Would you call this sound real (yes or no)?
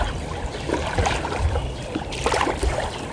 no